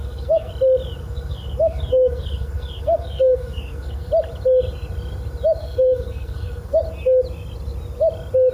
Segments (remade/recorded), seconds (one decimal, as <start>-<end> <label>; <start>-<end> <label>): 0.0-0.5 remade; 0.5-1.0 recorded; 1.0-4.1 remade; 4.1-5.6 recorded; 5.6-6.8 remade; 6.8-8.5 recorded